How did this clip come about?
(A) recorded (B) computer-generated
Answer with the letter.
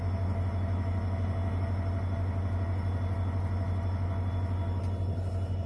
A